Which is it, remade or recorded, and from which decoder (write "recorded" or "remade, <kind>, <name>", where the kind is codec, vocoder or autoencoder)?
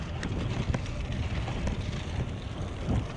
recorded